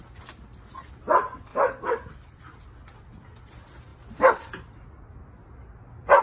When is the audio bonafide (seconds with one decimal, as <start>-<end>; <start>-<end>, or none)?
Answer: 0.0-6.2